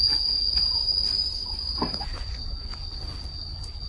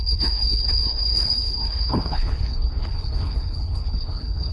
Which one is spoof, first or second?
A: second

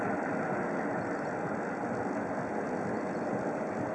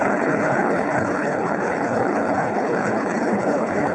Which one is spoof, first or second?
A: second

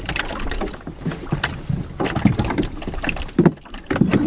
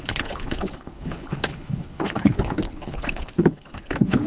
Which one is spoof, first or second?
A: second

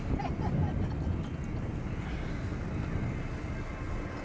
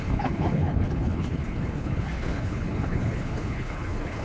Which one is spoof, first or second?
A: second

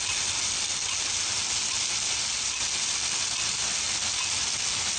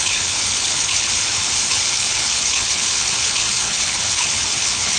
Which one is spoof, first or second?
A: second